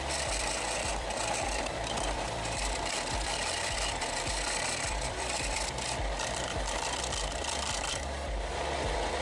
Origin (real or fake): fake